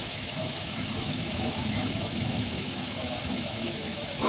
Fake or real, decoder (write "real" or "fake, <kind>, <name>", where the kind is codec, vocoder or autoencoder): fake, autoencoder, DAC-VAE